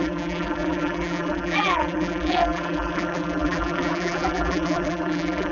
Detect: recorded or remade remade